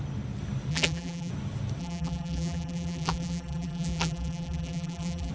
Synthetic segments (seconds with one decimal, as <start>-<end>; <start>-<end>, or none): 0.7-1.3; 1.8-5.3